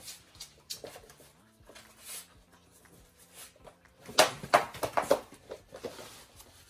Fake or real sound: real